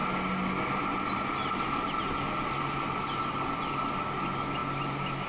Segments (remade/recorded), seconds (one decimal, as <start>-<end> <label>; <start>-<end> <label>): 0.0-5.3 recorded